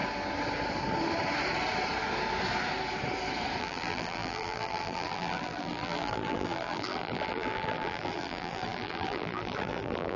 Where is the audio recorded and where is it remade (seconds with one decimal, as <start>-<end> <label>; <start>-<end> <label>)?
0.0-3.6 recorded; 3.6-10.2 remade